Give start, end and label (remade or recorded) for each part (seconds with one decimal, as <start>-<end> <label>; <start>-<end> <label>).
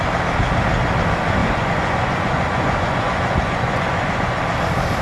0.0-1.4 recorded; 1.4-4.4 remade; 4.4-5.0 recorded